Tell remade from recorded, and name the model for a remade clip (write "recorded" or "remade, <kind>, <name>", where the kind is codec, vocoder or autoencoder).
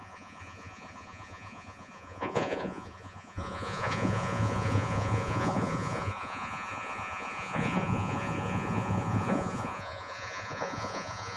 remade, vocoder, Vocos